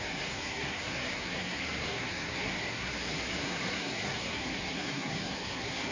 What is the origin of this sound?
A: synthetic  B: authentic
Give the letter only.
A